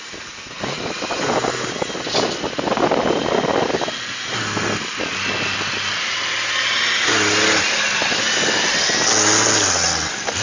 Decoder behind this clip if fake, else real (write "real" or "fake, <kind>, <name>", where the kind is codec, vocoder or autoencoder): real